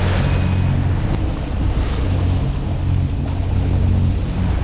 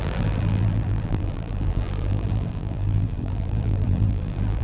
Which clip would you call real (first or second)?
first